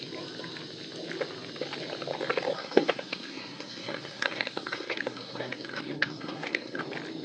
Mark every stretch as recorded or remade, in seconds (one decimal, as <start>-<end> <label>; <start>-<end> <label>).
0.0-2.5 recorded; 2.5-6.8 remade; 6.8-7.2 recorded